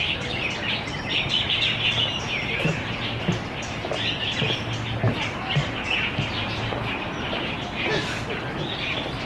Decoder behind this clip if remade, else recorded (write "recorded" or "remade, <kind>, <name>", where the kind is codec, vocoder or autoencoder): recorded